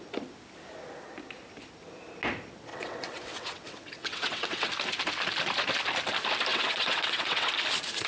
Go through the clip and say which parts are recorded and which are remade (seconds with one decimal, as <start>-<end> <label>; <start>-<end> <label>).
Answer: 0.0-2.7 recorded; 2.7-4.7 remade; 4.7-6.5 recorded; 6.5-7.5 remade; 7.5-8.1 recorded